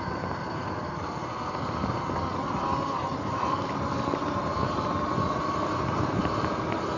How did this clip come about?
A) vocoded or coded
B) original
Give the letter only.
B